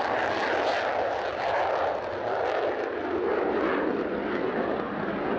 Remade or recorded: recorded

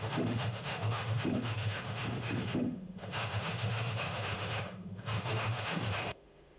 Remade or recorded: remade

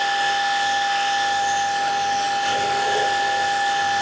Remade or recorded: remade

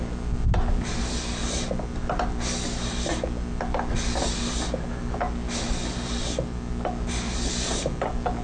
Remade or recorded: recorded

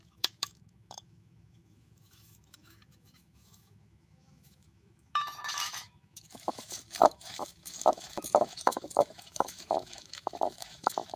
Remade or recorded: remade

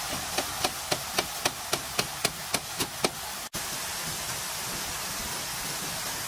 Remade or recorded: recorded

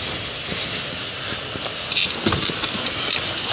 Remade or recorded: recorded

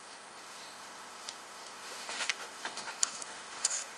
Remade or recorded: remade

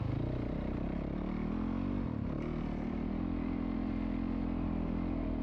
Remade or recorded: recorded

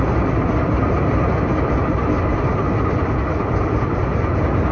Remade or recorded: recorded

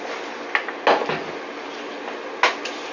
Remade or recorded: recorded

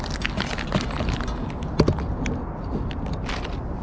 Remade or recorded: recorded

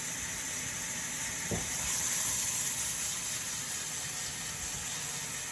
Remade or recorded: recorded